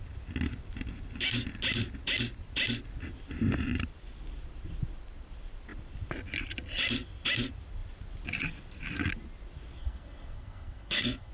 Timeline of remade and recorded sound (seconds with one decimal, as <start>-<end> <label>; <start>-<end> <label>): 0.0-9.8 recorded; 9.8-11.3 remade